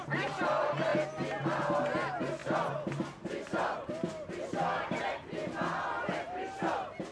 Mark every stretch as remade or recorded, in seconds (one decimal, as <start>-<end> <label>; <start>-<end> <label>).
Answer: 0.0-7.1 recorded

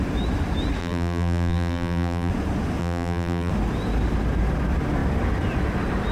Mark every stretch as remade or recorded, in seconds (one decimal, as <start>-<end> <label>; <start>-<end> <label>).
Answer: 0.0-0.8 recorded; 0.8-2.3 remade; 2.3-2.8 recorded; 2.8-3.5 remade; 3.5-6.1 recorded

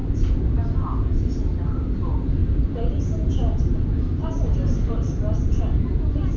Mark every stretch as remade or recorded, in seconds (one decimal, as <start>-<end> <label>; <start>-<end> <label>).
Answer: 0.0-1.0 recorded; 1.0-6.4 remade

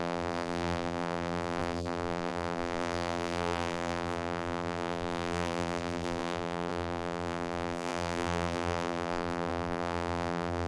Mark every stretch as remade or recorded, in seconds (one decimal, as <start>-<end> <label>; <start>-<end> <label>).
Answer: 0.0-10.7 remade

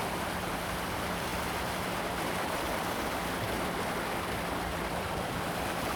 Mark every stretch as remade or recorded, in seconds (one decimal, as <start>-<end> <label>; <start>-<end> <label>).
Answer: 0.0-0.6 recorded; 0.6-6.0 remade

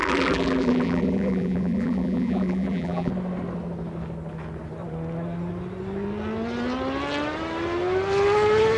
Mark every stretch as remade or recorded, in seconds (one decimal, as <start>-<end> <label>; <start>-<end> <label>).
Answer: 0.0-3.1 remade; 3.1-8.8 recorded

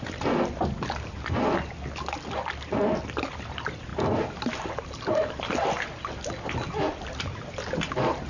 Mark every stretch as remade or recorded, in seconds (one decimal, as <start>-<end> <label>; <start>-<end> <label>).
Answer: 0.0-3.9 recorded; 3.9-5.4 remade; 5.4-8.3 recorded

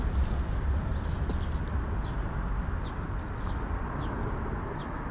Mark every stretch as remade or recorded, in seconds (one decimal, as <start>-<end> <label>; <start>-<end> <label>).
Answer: 0.0-5.1 recorded